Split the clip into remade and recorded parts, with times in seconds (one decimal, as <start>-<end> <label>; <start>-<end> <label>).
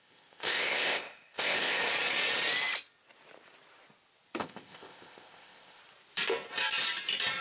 0.0-1.8 remade; 1.8-4.4 recorded; 4.4-5.8 remade; 5.8-7.4 recorded